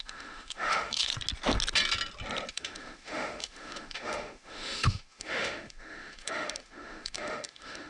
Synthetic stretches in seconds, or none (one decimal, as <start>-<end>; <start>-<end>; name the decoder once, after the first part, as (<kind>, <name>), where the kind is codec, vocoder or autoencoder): 0.0-1.1 (autoencoder, DAC-VAE); 2.5-7.9